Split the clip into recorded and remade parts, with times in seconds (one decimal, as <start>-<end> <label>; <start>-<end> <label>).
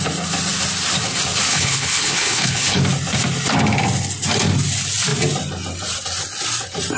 0.0-1.5 recorded; 1.5-2.8 remade; 2.8-7.0 recorded